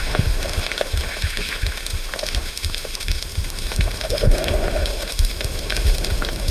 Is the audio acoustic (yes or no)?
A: no